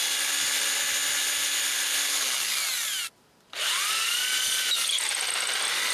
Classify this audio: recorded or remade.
recorded